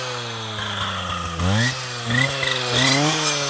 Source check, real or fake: real